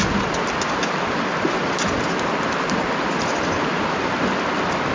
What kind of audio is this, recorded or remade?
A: recorded